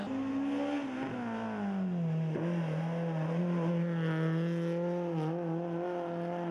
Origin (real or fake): real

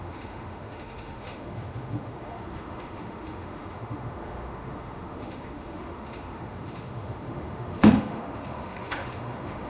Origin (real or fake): fake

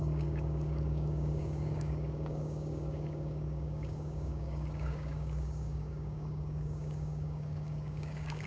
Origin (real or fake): fake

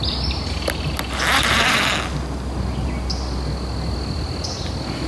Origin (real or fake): real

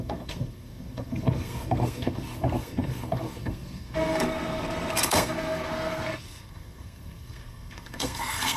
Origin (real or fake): fake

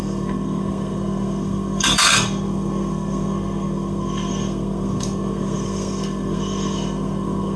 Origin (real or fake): fake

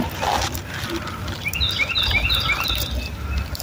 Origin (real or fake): real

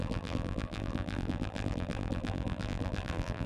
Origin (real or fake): fake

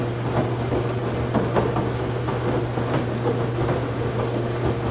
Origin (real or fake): real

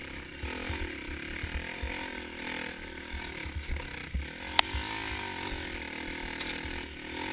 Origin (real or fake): real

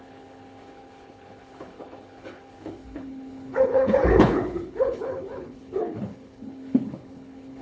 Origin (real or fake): fake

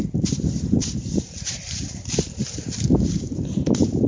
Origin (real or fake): fake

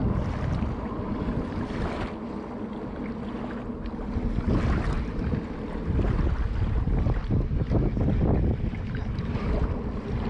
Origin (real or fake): real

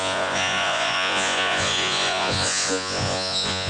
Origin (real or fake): fake